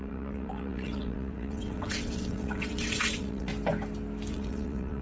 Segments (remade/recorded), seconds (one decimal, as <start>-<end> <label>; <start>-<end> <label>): 0.0-3.5 remade; 3.5-4.3 recorded; 4.3-5.0 remade